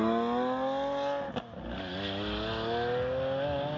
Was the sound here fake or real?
real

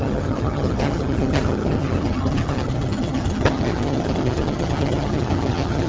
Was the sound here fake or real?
fake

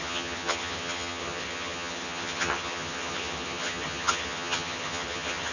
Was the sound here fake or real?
fake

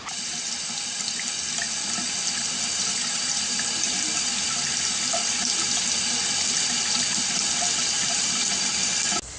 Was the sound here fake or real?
real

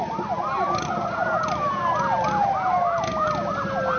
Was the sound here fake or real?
real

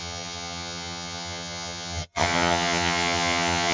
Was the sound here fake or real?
fake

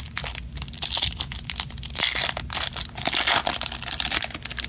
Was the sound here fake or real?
real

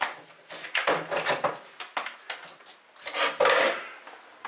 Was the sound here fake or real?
real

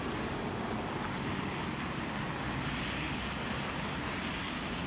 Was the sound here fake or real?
real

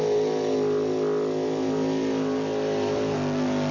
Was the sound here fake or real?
real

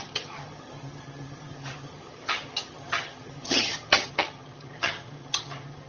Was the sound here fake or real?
fake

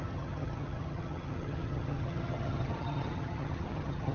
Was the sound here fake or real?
fake